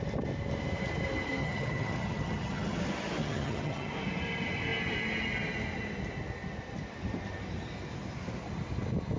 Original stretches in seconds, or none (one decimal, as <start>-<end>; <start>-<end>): 0.0-1.4; 2.8-3.2; 3.9-9.2

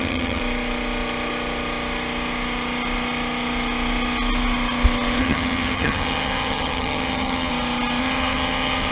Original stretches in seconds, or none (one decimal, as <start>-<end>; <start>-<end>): 0.4-5.2; 7.5-8.0

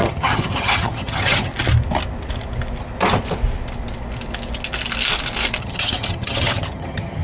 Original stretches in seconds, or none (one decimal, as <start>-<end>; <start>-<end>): 1.5-5.6

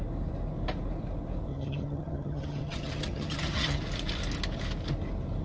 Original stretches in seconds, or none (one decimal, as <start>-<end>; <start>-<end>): 0.0-1.5; 3.8-5.4